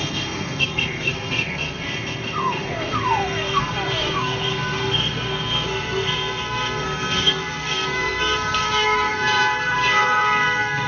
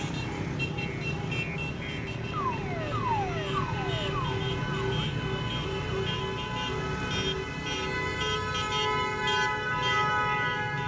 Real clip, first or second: second